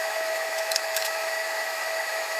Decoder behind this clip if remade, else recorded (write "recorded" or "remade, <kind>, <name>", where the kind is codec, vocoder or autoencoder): remade, autoencoder, DAC-VAE